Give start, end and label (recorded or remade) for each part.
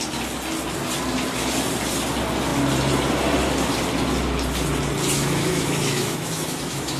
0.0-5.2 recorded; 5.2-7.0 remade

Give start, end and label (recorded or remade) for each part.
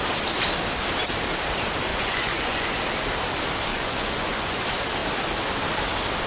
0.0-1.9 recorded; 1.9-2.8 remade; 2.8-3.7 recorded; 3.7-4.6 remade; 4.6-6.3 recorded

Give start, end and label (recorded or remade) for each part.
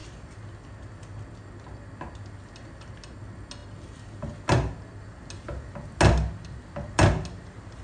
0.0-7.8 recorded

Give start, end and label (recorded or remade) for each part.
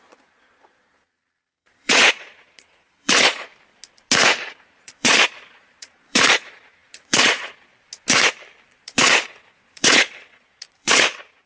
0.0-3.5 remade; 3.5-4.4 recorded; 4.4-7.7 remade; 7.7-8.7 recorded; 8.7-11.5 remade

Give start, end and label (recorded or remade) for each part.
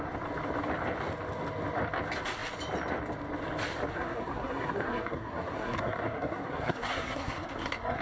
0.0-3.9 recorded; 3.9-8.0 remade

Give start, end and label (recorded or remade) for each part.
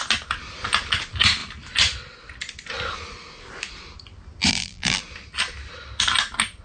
0.0-4.5 recorded; 4.5-5.0 remade; 5.0-6.6 recorded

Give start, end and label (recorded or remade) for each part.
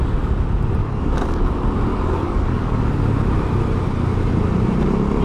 0.0-0.8 recorded; 0.8-1.4 remade; 1.4-1.9 recorded; 1.9-2.9 remade; 2.9-5.2 recorded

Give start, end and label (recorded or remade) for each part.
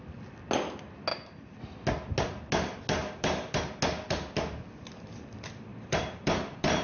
0.0-1.1 recorded; 1.1-1.6 remade; 1.6-3.0 recorded; 3.0-3.8 remade; 3.8-5.7 recorded; 5.7-6.8 remade